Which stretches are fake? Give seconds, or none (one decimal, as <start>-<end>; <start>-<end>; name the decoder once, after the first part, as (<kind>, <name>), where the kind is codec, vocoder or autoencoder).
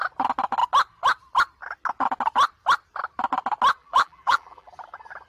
3.8-4.7 (vocoder, BigVGAN v2)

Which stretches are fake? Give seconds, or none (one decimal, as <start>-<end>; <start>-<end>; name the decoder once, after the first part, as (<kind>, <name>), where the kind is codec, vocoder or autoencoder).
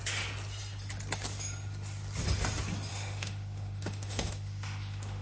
2.9-5.2 (autoencoder, DAC-VAE)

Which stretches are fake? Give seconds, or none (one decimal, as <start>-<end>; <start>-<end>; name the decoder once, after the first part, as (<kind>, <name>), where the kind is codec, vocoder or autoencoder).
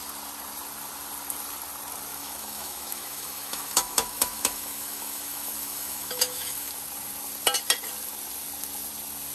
2.1-6.7 (autoencoder, DAC-VAE)